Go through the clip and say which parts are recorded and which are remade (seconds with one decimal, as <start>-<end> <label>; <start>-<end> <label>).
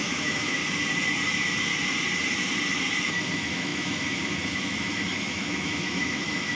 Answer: 0.0-0.6 remade; 0.6-3.0 recorded; 3.0-6.6 remade